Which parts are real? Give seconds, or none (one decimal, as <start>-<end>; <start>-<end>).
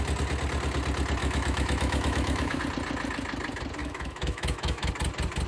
0.0-1.2; 2.6-3.8; 4.9-5.5